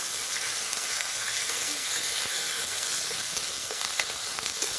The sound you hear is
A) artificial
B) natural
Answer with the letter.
A